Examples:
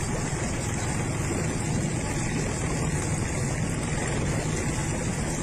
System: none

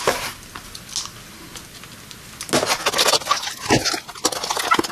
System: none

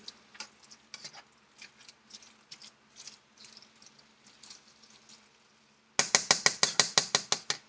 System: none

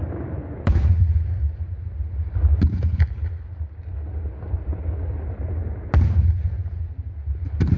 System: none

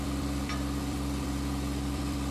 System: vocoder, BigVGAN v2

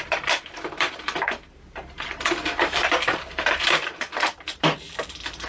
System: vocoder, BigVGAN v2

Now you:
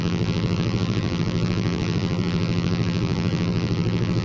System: vocoder, BigVGAN v2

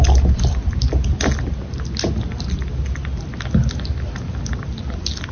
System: none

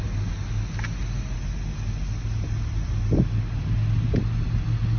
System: none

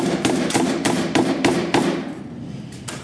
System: vocoder, BigVGAN v2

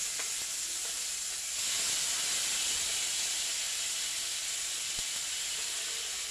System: none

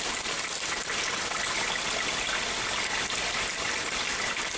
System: none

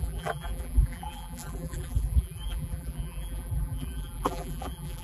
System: vocoder, BigVGAN v2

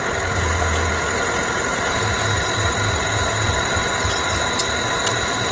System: none